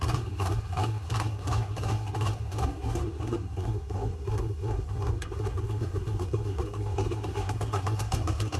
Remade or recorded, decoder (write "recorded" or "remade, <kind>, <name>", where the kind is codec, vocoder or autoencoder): remade, codec, SNAC